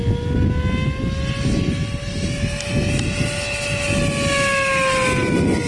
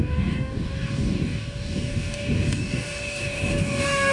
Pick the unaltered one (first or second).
first